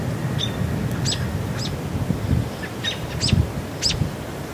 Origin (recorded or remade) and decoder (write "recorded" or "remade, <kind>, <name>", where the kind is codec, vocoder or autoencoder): recorded